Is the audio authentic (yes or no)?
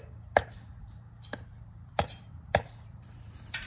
no